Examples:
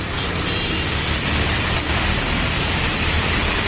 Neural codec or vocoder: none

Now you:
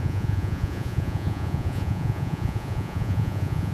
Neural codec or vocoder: vocoder, Vocos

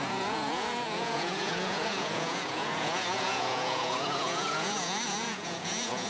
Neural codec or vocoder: vocoder, Vocos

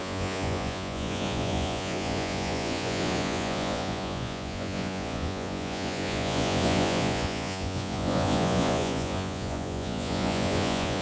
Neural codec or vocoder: vocoder, Vocos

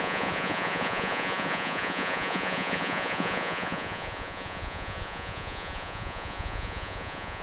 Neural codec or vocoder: vocoder, Vocos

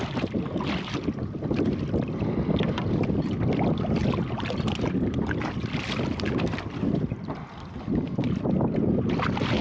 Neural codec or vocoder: none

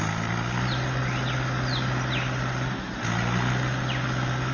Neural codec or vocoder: none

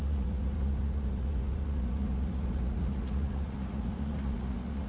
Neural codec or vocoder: vocoder, Vocos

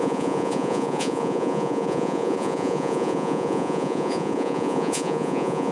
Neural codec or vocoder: vocoder, Vocos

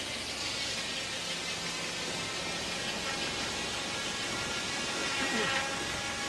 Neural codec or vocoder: none